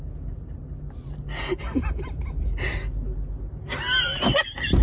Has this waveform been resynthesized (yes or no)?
no